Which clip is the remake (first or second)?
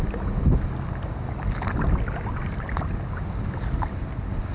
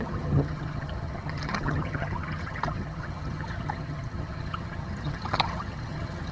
second